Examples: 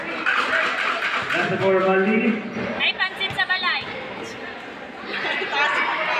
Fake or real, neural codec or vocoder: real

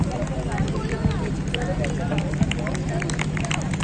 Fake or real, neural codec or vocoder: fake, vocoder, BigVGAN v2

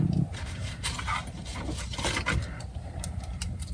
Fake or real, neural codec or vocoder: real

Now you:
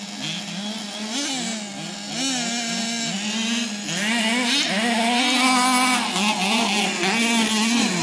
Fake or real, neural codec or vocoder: real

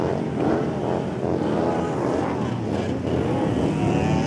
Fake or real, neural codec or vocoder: real